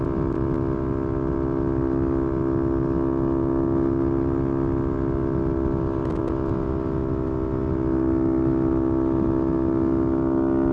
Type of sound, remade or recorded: recorded